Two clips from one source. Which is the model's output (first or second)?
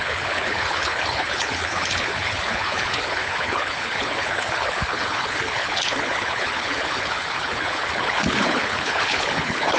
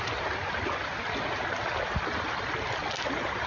first